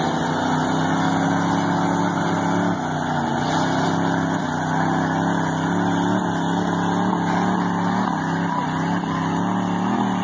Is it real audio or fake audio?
real